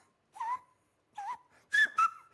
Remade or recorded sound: recorded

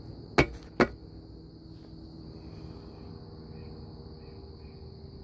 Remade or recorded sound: recorded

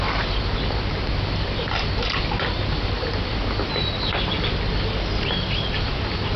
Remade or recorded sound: recorded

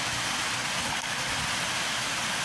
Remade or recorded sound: recorded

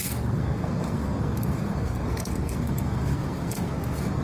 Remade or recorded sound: remade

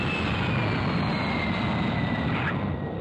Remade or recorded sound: recorded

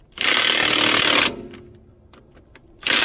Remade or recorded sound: recorded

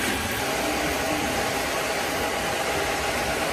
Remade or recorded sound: recorded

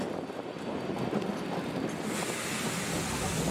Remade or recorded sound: recorded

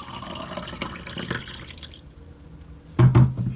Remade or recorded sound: recorded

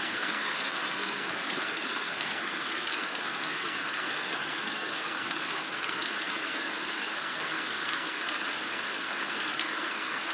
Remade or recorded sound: remade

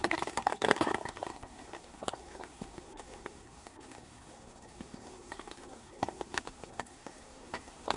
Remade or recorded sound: remade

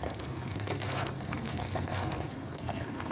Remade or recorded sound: remade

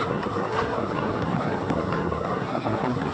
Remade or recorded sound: remade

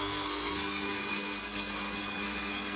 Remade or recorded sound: remade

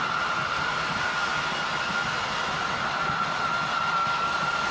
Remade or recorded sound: recorded